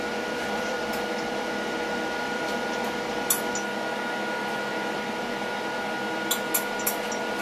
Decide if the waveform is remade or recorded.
recorded